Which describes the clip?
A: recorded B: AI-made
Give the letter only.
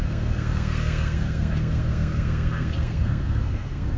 B